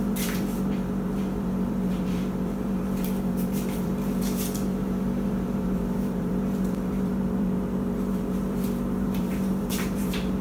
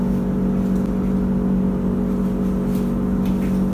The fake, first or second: first